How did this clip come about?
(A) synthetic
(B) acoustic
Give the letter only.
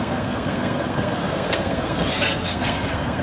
A